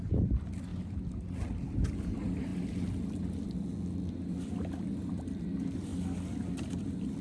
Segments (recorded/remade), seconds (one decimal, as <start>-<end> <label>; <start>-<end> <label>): 0.0-0.7 remade; 0.7-1.9 recorded; 1.9-2.5 remade; 2.5-4.5 recorded; 4.5-5.9 remade; 5.9-6.5 recorded; 6.5-7.2 remade